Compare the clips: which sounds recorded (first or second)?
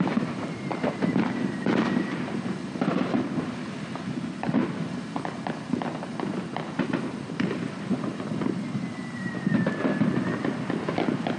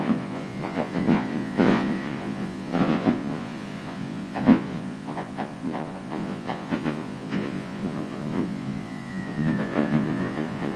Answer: first